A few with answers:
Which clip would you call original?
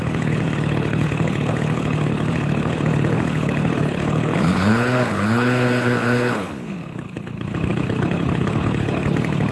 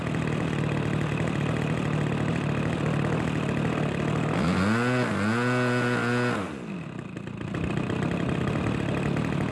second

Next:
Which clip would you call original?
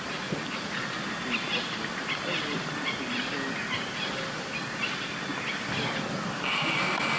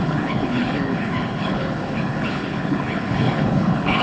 first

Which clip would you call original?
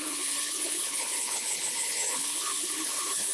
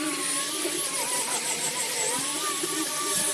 second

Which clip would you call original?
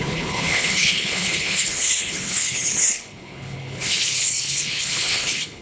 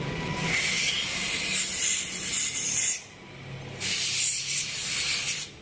second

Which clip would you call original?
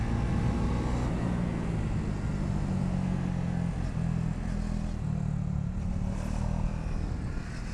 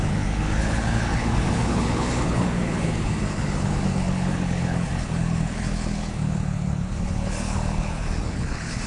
first